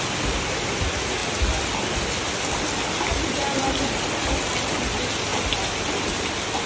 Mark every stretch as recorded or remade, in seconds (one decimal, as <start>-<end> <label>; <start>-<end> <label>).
0.0-6.7 recorded